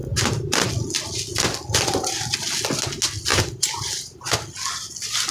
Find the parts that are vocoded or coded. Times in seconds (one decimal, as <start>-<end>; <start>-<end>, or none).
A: 0.0-0.7; 3.3-4.3